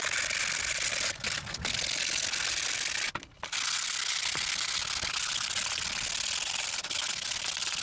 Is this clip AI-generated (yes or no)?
no